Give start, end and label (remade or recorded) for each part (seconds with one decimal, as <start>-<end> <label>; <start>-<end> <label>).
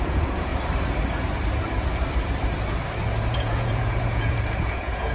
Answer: 0.0-0.5 remade; 0.5-3.3 recorded; 3.3-5.1 remade